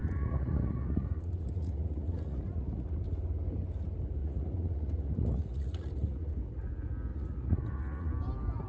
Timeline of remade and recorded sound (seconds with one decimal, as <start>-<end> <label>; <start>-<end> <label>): 0.0-3.0 remade; 3.0-4.2 recorded; 4.2-6.3 remade; 6.3-7.1 recorded; 7.1-8.1 remade; 8.1-8.7 recorded